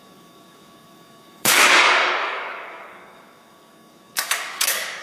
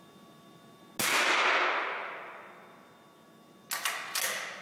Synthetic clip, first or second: first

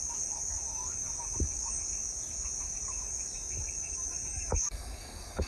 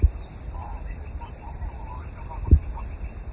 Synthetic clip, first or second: first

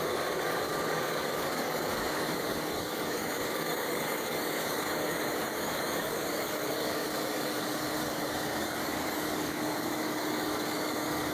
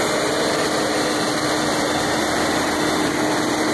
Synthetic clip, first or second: first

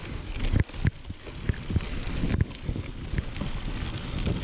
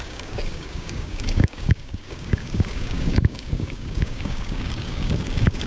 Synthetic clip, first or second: second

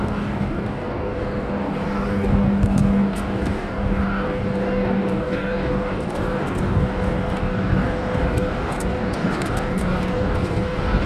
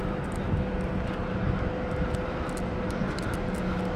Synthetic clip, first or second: first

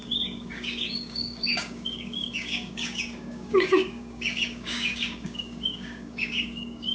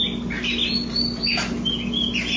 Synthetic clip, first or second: first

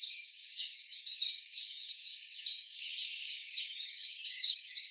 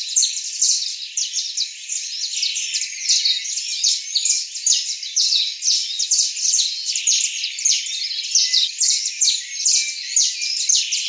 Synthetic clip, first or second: first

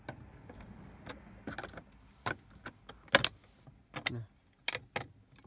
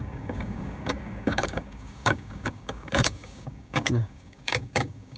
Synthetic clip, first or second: second